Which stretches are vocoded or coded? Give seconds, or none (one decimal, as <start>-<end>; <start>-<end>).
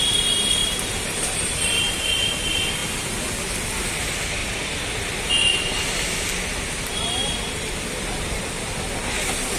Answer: 0.6-2.1